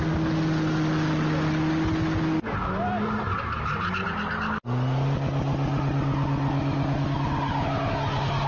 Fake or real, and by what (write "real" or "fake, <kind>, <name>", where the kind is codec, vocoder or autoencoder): real